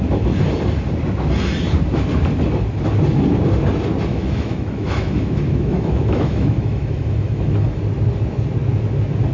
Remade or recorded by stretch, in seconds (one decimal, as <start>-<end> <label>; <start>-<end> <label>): 0.0-4.1 recorded; 4.1-7.8 remade; 7.8-9.3 recorded